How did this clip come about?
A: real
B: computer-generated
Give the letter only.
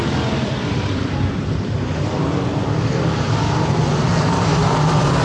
B